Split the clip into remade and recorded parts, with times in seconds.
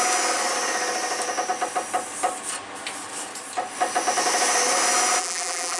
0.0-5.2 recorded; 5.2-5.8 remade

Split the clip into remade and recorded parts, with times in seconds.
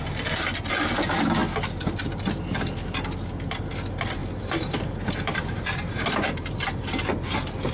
0.0-4.2 recorded; 4.2-7.0 remade; 7.0-7.7 recorded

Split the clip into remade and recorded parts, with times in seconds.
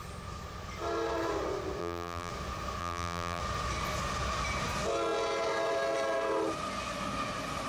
0.0-1.8 recorded; 1.8-2.3 remade; 2.3-2.8 recorded; 2.8-3.4 remade; 3.4-7.7 recorded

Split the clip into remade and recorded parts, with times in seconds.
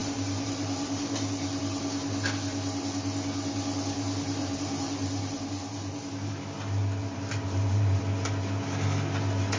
0.0-1.6 remade; 1.6-4.4 recorded; 4.4-6.3 remade; 6.3-7.0 recorded; 7.0-8.0 remade; 8.0-9.6 recorded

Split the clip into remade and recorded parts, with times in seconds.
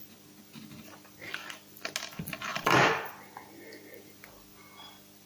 0.0-2.5 recorded; 2.5-3.1 remade; 3.1-5.3 recorded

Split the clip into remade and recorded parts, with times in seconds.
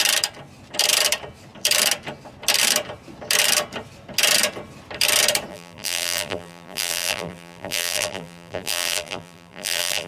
0.0-5.5 recorded; 5.5-10.1 remade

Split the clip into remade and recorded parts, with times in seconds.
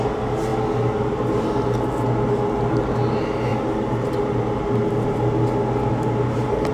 0.0-6.7 recorded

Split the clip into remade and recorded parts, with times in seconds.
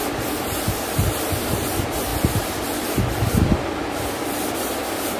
0.0-0.6 recorded; 0.6-2.1 remade; 2.1-5.2 recorded